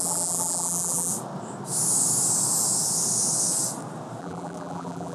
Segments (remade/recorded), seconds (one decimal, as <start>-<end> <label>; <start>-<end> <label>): 0.0-1.1 remade; 1.1-4.2 recorded; 4.2-5.1 remade